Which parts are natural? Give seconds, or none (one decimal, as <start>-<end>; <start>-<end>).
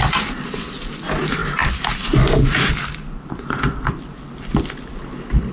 0.0-5.5